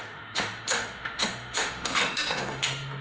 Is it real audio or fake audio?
fake